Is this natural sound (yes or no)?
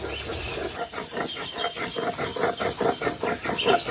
yes